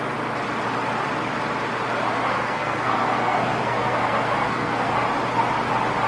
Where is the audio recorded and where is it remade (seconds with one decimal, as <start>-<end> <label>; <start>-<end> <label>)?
0.0-2.3 recorded; 2.3-4.9 remade; 4.9-6.1 recorded